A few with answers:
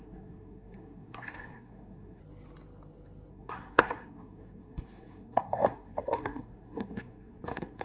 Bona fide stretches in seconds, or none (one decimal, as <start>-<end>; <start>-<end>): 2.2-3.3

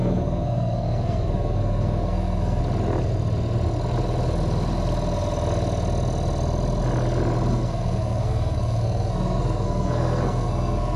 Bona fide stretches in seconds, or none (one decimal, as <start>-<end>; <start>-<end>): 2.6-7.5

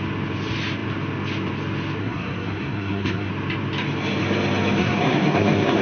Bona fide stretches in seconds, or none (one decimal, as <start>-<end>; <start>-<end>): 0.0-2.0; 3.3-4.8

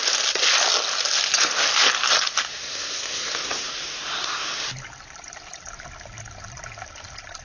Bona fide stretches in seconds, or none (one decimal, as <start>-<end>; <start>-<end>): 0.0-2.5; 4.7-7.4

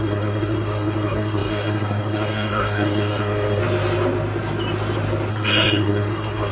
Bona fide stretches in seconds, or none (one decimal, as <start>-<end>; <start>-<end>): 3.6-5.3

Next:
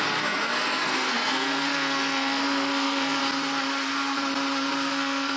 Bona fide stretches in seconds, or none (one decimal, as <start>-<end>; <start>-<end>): 3.2-4.9

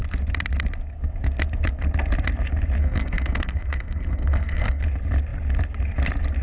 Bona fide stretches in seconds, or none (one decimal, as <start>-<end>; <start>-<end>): 0.0-2.8; 4.8-6.4

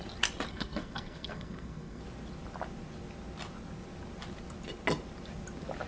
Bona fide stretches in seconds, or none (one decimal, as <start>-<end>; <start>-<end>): 0.0-0.5; 2.0-5.9